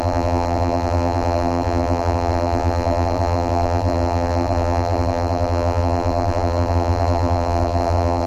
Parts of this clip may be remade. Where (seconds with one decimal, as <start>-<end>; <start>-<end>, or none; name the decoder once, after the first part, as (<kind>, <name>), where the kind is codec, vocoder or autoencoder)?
0.0-8.3 (vocoder, BigVGAN v2)